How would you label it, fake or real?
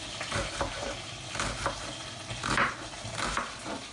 real